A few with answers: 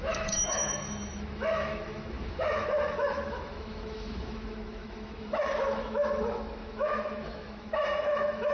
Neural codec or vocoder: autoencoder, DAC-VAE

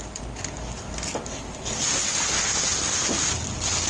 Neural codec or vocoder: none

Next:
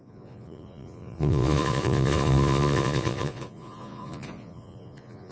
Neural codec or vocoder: vocoder, Vocos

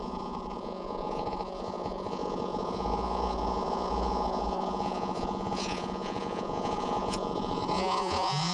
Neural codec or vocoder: vocoder, Vocos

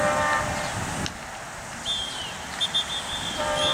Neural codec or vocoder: none